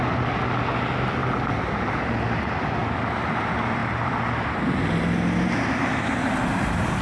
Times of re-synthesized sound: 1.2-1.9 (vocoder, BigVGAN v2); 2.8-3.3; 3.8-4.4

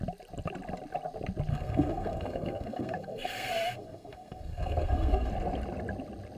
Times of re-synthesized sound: 1.5-5.3 (codec, SNAC)

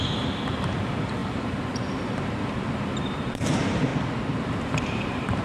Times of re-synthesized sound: 0.0-3.9 (vocoder, BigVGAN v2); 4.4-5.4

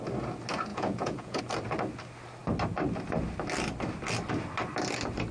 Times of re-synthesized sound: 0.7-1.4 (vocoder, Vocos)